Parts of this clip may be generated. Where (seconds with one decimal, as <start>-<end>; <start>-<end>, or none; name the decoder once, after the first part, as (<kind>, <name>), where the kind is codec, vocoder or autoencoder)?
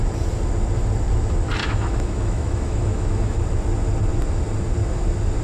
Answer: 1.6-3.4 (autoencoder, DAC-VAE)